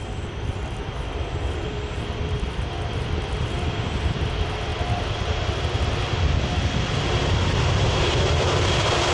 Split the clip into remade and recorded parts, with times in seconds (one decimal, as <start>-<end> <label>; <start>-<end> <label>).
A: 0.0-4.7 remade; 4.7-6.0 recorded; 6.0-9.1 remade